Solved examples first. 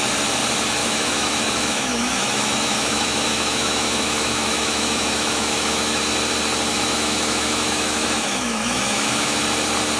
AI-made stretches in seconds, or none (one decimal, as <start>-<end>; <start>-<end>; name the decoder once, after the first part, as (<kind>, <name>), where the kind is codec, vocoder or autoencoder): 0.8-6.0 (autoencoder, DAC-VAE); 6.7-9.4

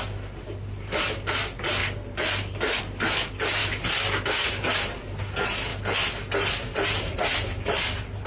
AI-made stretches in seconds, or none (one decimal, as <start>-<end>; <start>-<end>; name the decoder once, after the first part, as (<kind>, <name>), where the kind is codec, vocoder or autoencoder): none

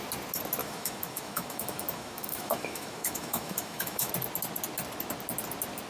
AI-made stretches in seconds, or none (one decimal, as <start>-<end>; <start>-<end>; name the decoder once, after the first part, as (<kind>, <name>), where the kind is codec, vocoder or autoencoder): 0.6-4.1 (autoencoder, DAC-VAE)

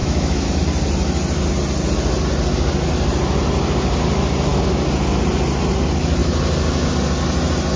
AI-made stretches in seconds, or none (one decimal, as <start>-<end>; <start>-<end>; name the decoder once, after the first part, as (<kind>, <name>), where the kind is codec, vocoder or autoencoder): 0.0-0.6 (autoencoder, DAC-VAE)